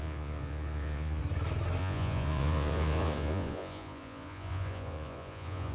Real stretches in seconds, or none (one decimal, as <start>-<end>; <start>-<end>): 1.2-1.8